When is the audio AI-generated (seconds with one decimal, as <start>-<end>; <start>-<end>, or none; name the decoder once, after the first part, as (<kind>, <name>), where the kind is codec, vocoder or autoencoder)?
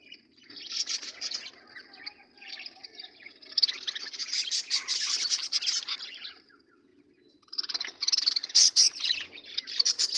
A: 8.4-8.9 (vocoder, BigVGAN v2)